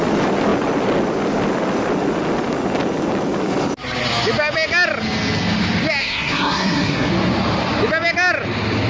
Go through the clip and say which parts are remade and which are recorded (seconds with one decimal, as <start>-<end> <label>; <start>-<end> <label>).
0.0-6.0 recorded; 6.0-7.1 remade; 7.1-8.9 recorded